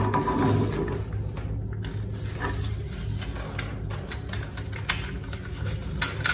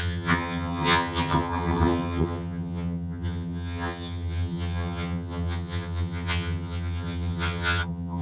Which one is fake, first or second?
second